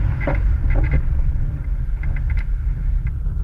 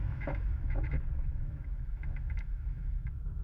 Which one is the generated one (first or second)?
second